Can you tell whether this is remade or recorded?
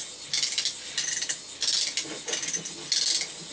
recorded